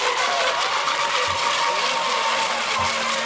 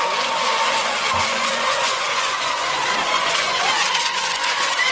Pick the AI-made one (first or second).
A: second